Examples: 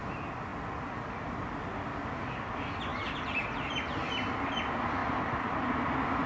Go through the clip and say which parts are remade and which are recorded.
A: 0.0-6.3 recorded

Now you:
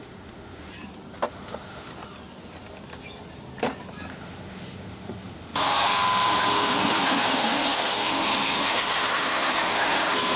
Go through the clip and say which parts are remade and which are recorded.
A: 0.0-0.7 remade; 0.7-1.3 recorded; 1.3-1.9 remade; 1.9-4.1 recorded; 4.1-10.4 remade

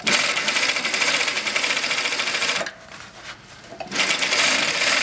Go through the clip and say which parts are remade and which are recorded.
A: 0.0-5.0 recorded

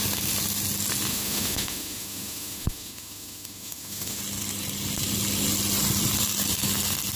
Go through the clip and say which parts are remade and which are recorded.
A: 0.0-1.1 recorded; 1.1-4.2 remade; 4.2-7.2 recorded

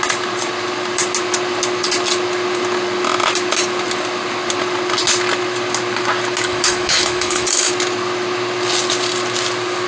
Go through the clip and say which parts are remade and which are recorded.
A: 0.0-6.5 recorded; 6.5-7.7 remade; 7.7-9.9 recorded

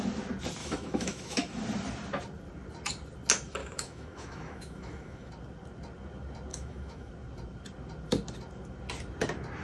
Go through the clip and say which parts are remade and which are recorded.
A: 0.0-0.6 recorded; 0.6-1.6 remade; 1.6-3.6 recorded; 3.6-5.3 remade; 5.3-6.5 recorded; 6.5-7.1 remade; 7.1-9.6 recorded

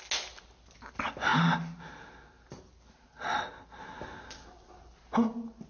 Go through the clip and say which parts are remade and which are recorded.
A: 0.0-5.7 recorded

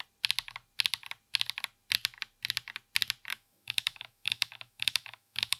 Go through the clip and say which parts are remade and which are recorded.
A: 0.0-3.3 recorded; 3.3-5.6 remade